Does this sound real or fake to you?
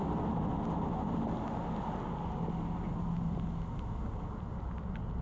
real